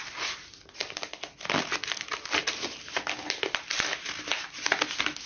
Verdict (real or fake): real